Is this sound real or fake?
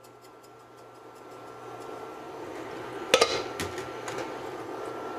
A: real